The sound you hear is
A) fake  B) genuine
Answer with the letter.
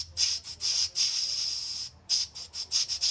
B